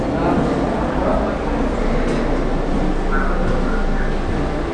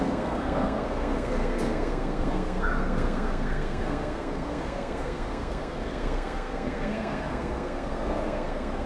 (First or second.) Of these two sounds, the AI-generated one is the second